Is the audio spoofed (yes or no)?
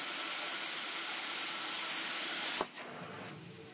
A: no